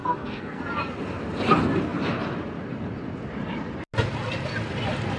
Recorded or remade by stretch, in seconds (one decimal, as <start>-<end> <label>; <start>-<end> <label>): 0.0-0.6 remade; 0.6-5.2 recorded

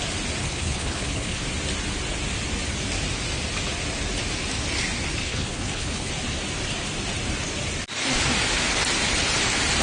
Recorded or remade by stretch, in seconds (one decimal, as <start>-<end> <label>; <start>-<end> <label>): 0.0-0.4 recorded; 0.4-1.4 remade; 1.4-5.2 recorded; 5.2-6.1 remade; 6.1-9.8 recorded

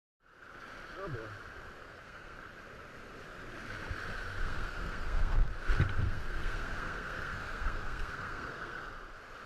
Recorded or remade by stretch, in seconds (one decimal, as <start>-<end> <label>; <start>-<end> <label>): 0.0-1.8 recorded; 1.8-2.4 remade; 2.4-4.4 recorded; 4.4-5.5 remade; 5.5-6.0 recorded; 6.0-8.8 remade; 8.8-9.5 recorded

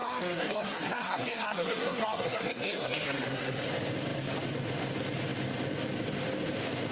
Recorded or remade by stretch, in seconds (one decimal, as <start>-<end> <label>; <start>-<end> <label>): 0.0-3.6 remade; 3.6-6.9 recorded

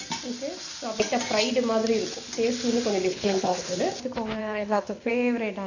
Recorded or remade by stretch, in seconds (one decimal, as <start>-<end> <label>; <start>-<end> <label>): 0.0-3.1 recorded; 3.1-3.8 remade; 3.8-4.4 recorded; 4.4-5.1 remade; 5.1-5.7 recorded

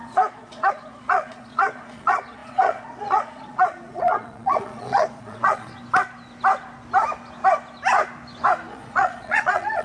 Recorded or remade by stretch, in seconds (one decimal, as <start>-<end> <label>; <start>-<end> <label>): 0.0-5.7 remade; 5.7-8.7 recorded; 8.7-9.8 remade

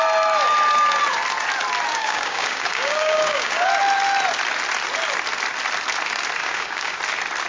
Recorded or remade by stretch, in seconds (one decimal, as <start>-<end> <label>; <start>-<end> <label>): 0.0-1.9 recorded; 1.9-3.7 remade; 3.7-6.4 recorded; 6.4-7.0 remade; 7.0-7.5 recorded

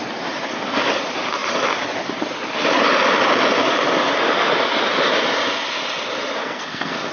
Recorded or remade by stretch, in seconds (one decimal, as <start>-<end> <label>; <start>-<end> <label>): 0.0-6.4 recorded; 6.4-7.1 remade